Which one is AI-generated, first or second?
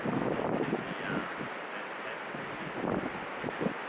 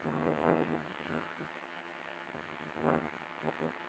second